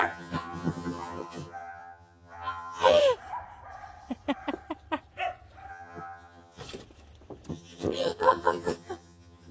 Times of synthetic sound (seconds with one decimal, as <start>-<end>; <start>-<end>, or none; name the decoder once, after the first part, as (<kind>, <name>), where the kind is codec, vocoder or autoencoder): 0.0-3.0 (vocoder, HiFi-GAN); 5.7-6.6; 7.5-9.5